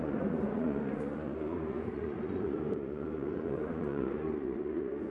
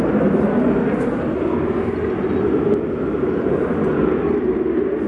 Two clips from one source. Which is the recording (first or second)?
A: second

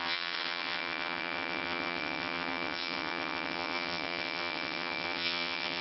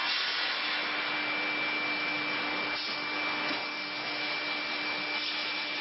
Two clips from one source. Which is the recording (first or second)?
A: second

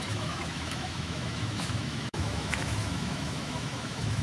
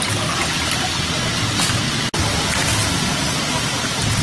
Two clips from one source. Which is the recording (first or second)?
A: second